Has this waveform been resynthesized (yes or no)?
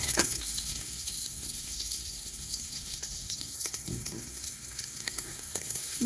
yes